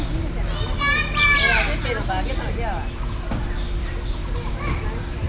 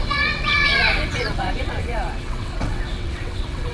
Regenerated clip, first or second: second